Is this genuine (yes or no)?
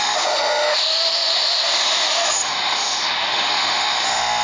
no